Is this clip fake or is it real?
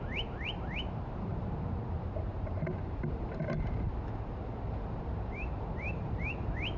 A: fake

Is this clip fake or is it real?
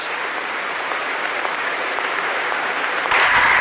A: fake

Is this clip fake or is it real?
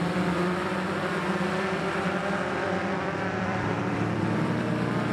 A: fake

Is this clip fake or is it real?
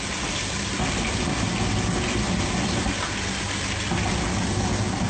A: real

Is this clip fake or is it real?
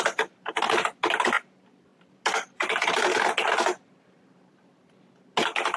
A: real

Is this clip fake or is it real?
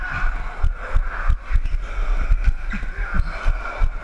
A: real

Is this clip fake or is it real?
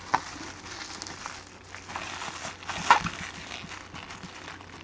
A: real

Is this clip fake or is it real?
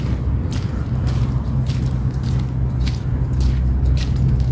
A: real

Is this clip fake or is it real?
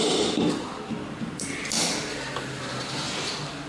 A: real